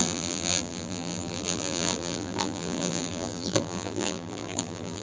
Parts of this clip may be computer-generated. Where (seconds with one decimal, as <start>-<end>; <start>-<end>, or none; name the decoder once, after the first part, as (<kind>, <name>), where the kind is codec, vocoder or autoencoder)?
0.0-5.0 (vocoder, BigVGAN v2)